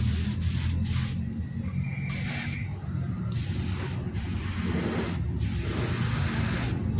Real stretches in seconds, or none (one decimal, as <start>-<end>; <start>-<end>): 0.0-7.0